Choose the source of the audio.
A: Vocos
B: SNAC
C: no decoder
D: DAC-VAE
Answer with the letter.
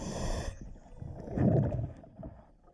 C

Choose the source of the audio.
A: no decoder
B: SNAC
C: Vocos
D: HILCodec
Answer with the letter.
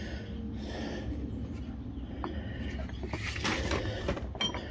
A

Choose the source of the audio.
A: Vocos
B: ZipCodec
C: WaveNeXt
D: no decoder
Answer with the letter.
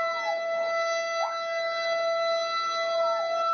D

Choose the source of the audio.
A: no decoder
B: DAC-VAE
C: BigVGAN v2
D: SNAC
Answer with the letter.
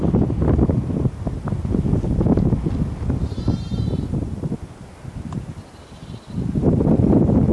A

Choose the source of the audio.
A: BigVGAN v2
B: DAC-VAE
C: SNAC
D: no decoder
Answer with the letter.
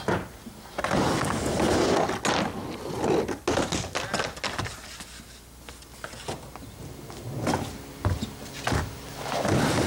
D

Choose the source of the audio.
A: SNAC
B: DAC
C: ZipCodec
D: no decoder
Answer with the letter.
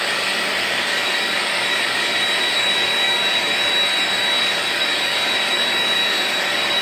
B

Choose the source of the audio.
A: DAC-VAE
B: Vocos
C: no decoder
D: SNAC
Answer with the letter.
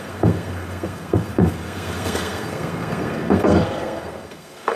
D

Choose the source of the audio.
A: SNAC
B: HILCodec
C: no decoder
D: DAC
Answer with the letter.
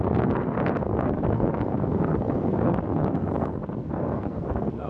A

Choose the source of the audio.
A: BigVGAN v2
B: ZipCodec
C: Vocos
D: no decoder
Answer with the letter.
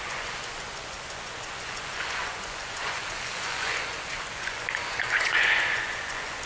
C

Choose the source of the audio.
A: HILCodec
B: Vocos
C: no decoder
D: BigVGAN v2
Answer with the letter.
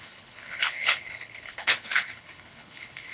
A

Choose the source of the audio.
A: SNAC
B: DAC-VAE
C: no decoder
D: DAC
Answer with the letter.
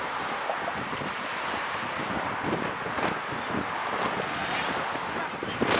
C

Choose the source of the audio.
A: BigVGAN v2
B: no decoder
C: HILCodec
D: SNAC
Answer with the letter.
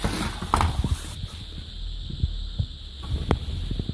B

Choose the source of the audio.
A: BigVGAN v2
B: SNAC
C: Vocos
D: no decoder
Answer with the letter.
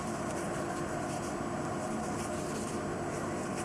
D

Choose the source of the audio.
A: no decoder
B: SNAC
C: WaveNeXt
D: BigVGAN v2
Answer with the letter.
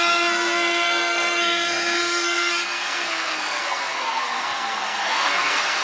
B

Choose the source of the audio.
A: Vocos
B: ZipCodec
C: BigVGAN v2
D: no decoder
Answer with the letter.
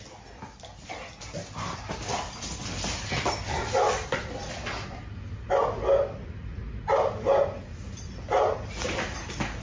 D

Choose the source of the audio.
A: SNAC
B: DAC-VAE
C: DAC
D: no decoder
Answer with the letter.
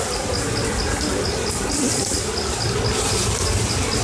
D